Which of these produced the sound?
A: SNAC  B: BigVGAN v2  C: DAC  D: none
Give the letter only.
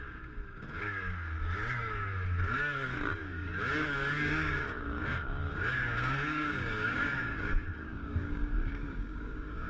C